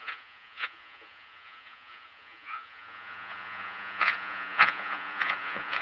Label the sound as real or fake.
fake